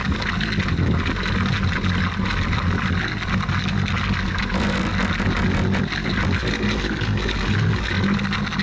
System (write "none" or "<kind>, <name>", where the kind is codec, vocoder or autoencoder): none